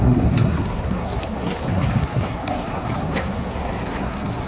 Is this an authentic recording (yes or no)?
no